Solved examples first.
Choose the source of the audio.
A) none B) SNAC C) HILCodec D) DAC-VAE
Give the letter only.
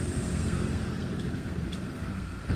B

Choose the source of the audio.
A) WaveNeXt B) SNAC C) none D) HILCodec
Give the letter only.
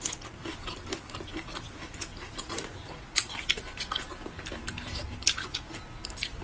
C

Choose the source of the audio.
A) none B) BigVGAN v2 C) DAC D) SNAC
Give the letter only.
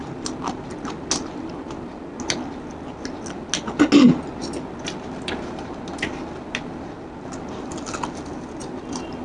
A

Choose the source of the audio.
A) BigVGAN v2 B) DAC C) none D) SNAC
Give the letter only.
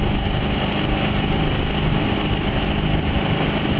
C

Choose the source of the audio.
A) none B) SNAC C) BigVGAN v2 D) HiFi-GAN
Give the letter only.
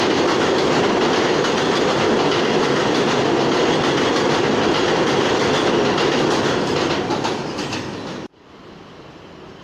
A